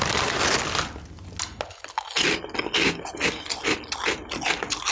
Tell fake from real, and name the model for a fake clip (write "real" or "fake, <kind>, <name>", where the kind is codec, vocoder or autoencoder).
real